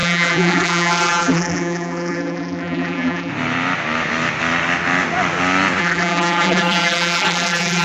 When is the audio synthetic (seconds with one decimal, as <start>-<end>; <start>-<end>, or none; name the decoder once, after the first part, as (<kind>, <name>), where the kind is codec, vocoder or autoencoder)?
0.0-3.3 (vocoder, BigVGAN v2); 5.8-7.8